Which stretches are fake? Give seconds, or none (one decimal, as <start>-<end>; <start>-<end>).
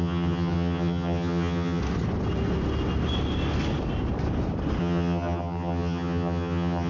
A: 0.0-1.8; 4.8-6.9